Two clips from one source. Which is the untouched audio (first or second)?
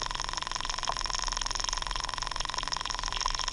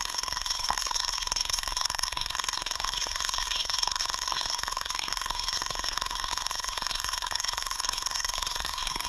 first